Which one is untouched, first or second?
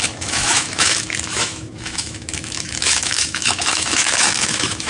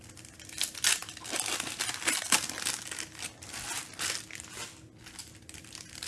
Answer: second